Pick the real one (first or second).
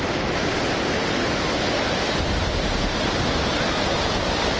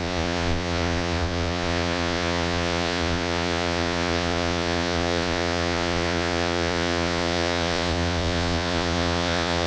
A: first